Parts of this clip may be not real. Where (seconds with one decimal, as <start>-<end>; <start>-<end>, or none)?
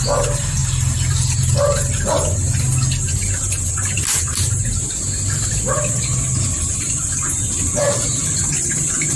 none